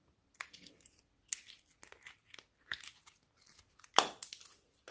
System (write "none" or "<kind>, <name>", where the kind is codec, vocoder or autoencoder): none